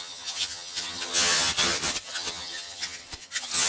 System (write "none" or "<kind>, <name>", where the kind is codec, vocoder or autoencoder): vocoder, HiFi-GAN